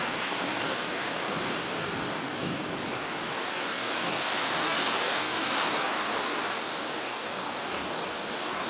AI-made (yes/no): yes